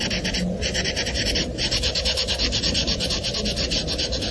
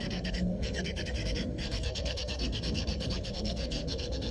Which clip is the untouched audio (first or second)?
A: first